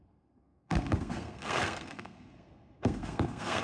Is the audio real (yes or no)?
no